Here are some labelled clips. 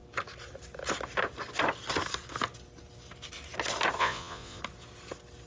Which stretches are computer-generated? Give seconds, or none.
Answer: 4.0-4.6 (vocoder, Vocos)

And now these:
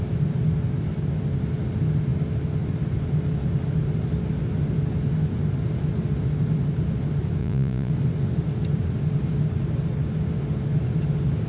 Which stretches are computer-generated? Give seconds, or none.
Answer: 7.4-7.9 (vocoder, Vocos)

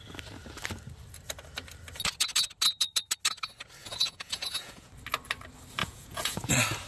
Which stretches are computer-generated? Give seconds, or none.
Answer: 3.8-4.9 (vocoder, Vocos); 5.8-6.5

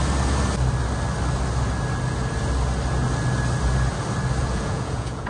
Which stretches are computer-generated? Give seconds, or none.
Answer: 4.4-5.3 (vocoder, Vocos)

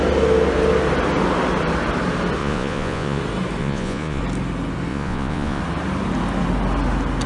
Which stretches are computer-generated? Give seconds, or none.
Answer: 2.4-3.2 (vocoder, Vocos); 3.6-4.2; 4.9-5.6